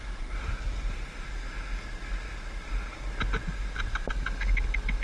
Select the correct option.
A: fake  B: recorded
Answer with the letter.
B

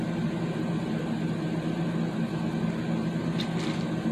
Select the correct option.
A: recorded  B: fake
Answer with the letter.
A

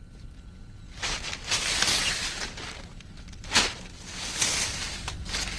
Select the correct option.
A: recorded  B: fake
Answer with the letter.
A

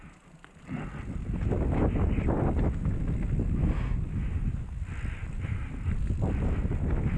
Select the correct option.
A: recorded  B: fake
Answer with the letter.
A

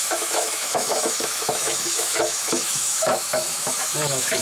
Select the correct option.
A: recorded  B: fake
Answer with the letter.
B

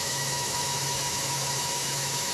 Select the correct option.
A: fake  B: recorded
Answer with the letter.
A